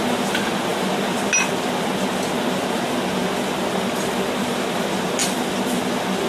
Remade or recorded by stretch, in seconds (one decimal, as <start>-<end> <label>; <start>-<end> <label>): 0.0-6.3 recorded